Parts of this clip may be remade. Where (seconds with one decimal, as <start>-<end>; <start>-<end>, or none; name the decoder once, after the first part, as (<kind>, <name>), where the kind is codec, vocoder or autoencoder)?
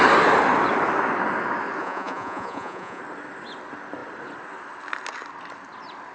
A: 1.8-3.0 (vocoder, Vocos)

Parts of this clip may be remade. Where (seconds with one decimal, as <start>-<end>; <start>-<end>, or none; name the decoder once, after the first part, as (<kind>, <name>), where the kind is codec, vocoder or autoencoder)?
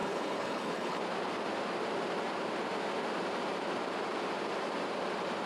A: 0.0-1.0 (codec, HILCodec)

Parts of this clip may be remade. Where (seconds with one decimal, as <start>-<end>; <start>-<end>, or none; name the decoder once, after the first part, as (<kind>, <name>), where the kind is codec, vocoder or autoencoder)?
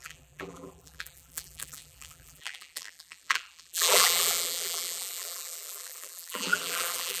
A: 0.0-7.2 (vocoder, BigVGAN v2)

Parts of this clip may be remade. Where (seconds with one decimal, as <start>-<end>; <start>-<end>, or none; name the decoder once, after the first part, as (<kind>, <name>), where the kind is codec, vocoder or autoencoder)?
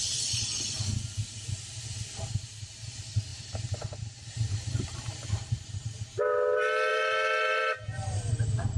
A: 3.3-6.0 (vocoder, BigVGAN v2); 6.9-8.2